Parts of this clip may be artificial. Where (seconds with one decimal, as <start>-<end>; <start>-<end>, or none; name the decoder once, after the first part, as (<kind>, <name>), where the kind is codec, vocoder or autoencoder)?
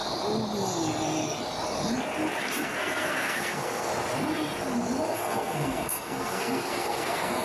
2.4-3.9 (codec, SNAC); 5.1-7.4